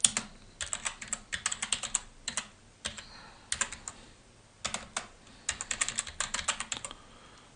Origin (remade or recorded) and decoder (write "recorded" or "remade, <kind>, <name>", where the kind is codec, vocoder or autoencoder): recorded